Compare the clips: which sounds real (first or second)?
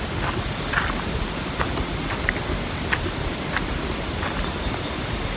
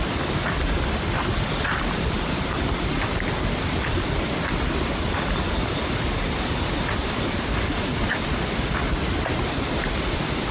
first